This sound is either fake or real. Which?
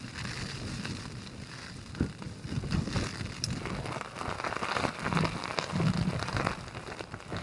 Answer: real